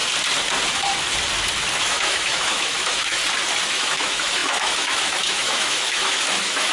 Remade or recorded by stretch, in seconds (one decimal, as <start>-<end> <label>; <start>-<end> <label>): 0.0-1.8 recorded; 1.8-3.2 remade; 3.2-3.7 recorded; 3.7-6.7 remade